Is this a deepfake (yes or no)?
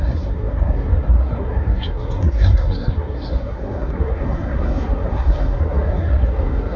yes